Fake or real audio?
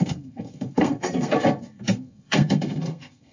fake